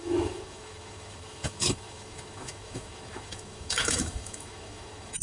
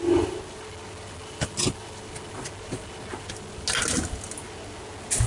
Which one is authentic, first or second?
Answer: second